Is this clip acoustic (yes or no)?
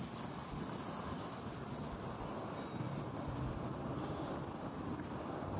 yes